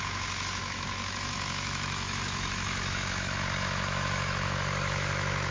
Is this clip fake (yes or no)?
yes